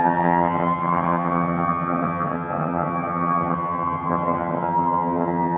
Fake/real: fake